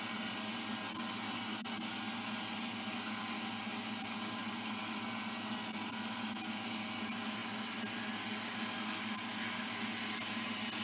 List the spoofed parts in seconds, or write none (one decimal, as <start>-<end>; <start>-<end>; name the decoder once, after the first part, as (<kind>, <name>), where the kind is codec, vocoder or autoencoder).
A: none